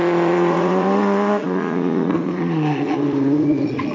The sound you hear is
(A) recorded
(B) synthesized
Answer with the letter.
B